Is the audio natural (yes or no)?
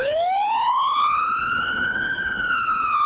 no